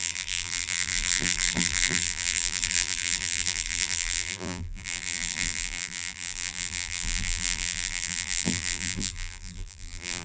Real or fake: fake